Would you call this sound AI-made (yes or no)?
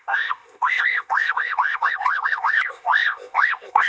yes